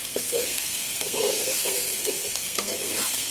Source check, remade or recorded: remade